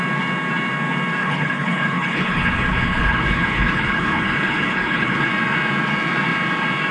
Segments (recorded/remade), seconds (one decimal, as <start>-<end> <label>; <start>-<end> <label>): 0.0-1.2 recorded; 1.2-5.3 remade; 5.3-6.9 recorded